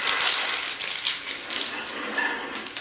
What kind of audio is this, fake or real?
real